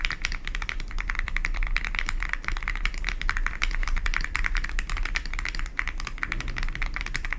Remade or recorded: remade